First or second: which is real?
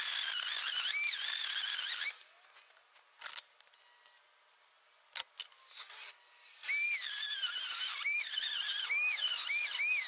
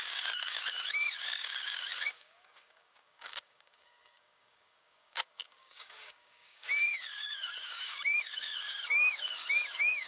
first